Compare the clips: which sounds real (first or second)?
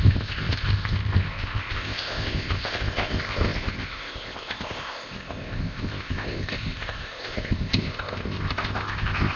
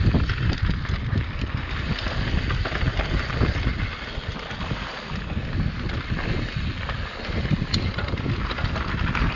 second